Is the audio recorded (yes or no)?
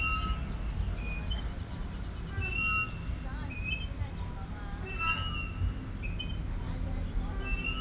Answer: yes